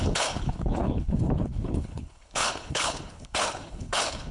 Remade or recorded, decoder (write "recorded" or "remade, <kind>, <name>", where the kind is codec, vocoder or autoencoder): remade, codec, HILCodec